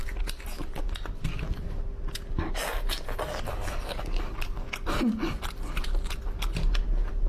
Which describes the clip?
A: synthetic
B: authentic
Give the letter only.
B